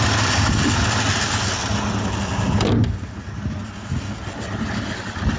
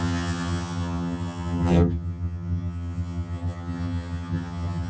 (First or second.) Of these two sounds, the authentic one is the first